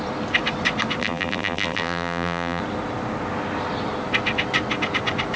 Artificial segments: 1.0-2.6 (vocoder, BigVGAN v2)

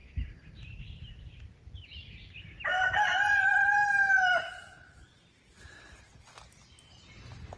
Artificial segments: 0.0-1.3 (vocoder, BigVGAN v2)

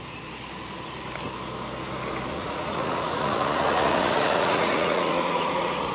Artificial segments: 2.3-5.9 (vocoder, Vocos)

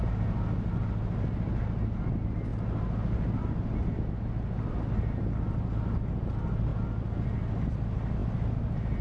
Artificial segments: none

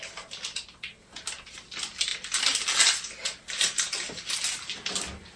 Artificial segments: none